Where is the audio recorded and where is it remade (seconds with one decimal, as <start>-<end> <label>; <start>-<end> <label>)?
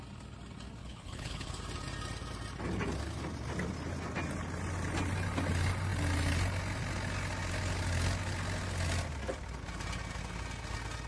0.0-0.8 recorded; 0.8-1.5 remade; 1.5-11.1 recorded